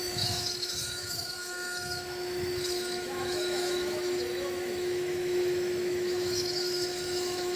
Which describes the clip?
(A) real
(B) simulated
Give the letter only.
B